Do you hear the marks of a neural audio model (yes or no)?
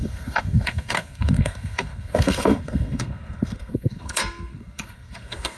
yes